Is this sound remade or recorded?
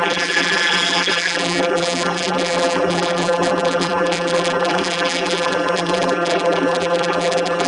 remade